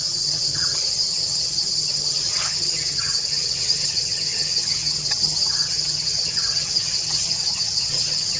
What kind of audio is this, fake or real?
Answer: fake